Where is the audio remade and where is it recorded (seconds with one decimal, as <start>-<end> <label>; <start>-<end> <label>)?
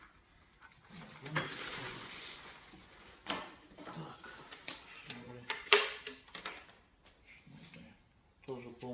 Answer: 0.0-1.7 recorded; 1.7-3.4 remade; 3.4-5.0 recorded; 5.0-6.0 remade; 6.0-8.9 recorded